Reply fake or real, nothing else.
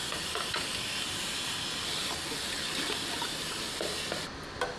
real